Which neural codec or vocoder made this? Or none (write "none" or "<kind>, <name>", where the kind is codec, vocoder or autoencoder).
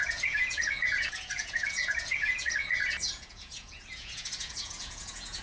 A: vocoder, Vocos